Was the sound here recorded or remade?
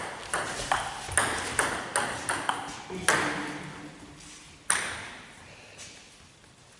recorded